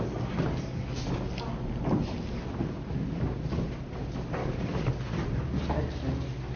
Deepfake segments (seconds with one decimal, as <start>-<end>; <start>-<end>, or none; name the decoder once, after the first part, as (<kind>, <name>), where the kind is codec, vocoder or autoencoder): 4.4-4.9 (codec, DAC)